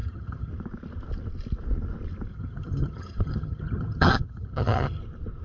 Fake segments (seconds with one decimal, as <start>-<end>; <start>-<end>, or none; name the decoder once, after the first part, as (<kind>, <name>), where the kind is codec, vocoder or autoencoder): 0.0-0.5 (vocoder, HiFi-GAN); 2.3-5.0